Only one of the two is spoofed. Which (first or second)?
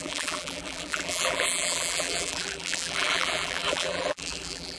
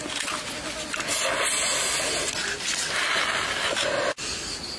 first